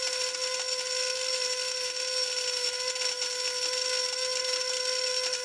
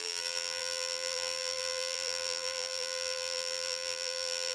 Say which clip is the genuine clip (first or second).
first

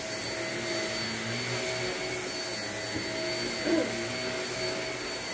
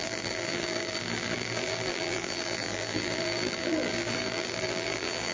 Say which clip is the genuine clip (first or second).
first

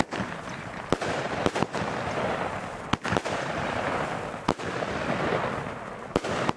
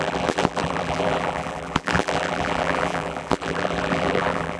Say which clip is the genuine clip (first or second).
first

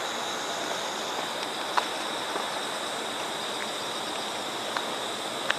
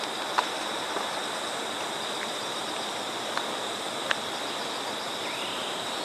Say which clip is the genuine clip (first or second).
first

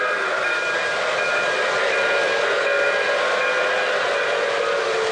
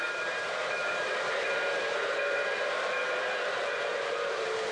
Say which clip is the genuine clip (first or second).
first